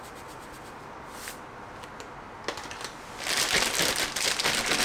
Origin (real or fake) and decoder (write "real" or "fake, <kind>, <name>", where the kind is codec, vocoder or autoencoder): real